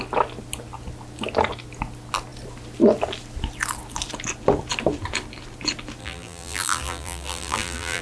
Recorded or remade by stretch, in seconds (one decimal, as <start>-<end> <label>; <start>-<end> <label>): 0.0-6.0 recorded; 6.0-8.0 remade

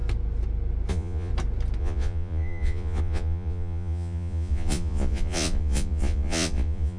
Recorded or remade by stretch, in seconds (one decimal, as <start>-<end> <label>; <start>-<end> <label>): 0.0-0.9 recorded; 0.9-1.3 remade; 1.3-1.8 recorded; 1.8-7.0 remade

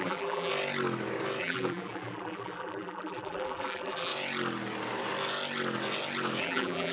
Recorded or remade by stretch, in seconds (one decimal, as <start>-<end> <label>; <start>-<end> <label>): 0.0-0.5 remade; 0.5-1.4 recorded; 1.4-4.1 remade; 4.1-6.4 recorded; 6.4-6.9 remade

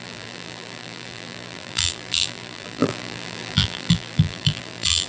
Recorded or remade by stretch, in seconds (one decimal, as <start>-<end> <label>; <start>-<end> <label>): 0.0-5.1 remade

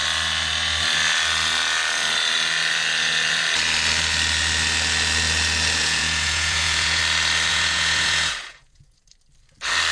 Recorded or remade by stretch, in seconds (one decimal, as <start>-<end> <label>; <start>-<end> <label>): 0.0-5.8 recorded; 5.8-7.0 remade; 7.0-7.5 recorded; 7.5-9.1 remade; 9.1-9.9 recorded

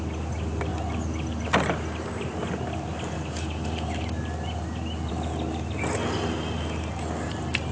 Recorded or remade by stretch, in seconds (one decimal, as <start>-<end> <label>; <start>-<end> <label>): 0.0-7.7 recorded